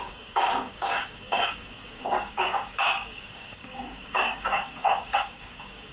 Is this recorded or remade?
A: remade